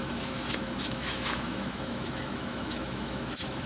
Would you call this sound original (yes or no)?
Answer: no